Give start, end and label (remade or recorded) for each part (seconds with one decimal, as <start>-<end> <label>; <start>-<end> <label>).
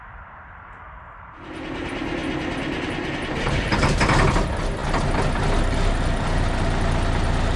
0.0-7.6 recorded